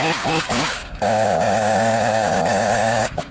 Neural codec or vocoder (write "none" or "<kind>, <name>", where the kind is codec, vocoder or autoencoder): codec, DAC